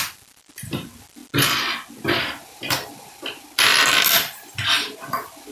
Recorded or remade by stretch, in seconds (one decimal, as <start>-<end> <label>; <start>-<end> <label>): 0.0-1.2 remade; 1.2-1.9 recorded; 1.9-5.5 remade